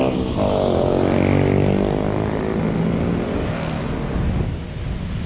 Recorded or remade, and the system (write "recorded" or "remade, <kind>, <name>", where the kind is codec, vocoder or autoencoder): recorded